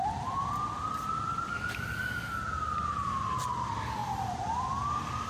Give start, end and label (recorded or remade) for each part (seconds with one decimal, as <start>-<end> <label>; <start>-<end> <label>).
0.0-4.0 recorded; 4.0-5.3 remade